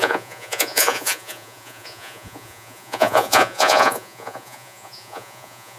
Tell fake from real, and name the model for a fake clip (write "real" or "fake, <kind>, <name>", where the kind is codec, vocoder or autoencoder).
fake, vocoder, Vocos